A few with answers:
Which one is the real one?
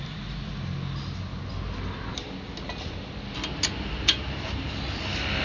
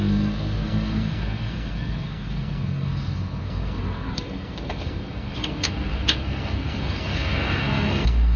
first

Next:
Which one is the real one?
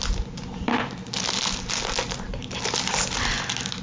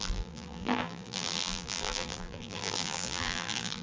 first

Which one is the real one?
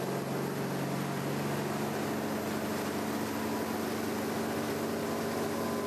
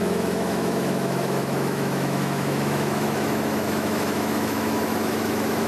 first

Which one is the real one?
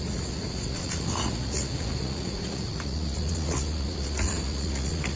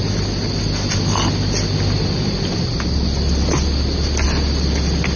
second